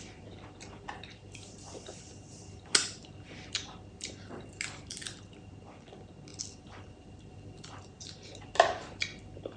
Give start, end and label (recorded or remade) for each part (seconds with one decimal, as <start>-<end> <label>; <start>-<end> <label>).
0.0-6.3 recorded; 6.3-7.8 remade; 7.8-9.6 recorded